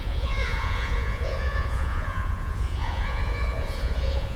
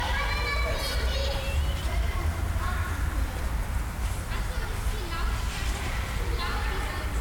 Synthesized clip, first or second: first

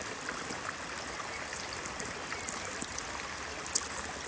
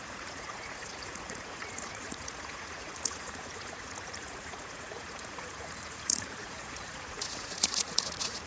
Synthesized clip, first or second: second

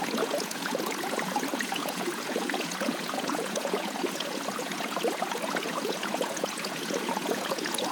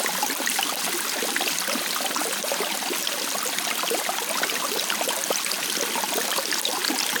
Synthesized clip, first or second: first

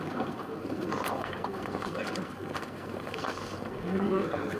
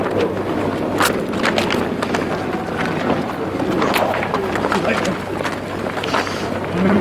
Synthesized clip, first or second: first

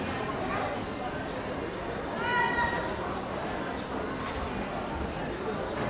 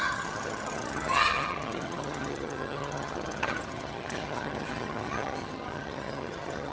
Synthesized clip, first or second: second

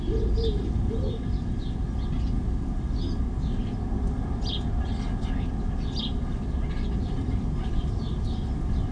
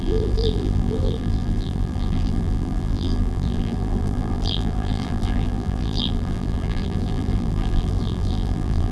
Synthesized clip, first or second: second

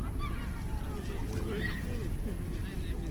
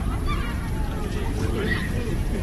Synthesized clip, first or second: second